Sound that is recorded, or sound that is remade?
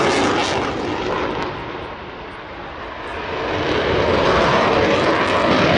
recorded